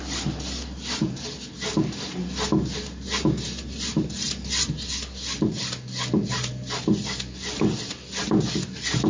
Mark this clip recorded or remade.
recorded